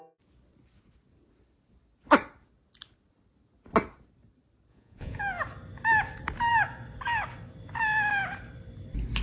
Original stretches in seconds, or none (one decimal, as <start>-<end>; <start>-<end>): 0.0-4.7; 5.2-9.2